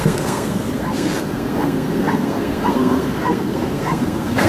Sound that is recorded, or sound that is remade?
remade